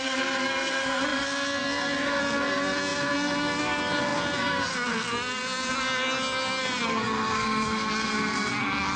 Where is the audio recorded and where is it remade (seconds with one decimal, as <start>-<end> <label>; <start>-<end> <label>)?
0.0-9.0 remade